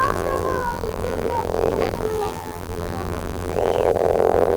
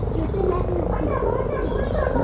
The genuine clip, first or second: second